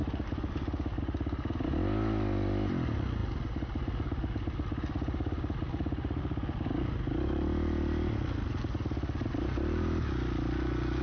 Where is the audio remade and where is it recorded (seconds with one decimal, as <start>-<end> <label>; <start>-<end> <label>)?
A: 0.0-11.0 recorded